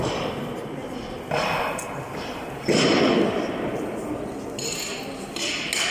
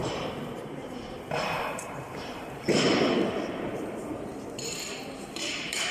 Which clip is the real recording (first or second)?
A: first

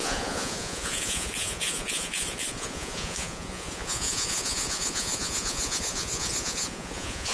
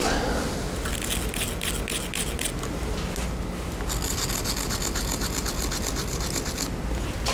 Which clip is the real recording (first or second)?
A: second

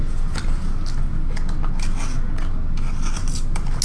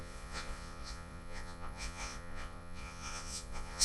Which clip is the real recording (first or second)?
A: first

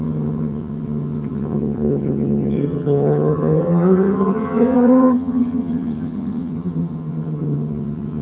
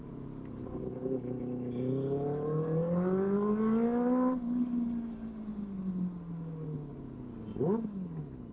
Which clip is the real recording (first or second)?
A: second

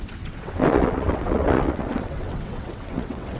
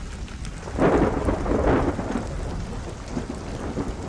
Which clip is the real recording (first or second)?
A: second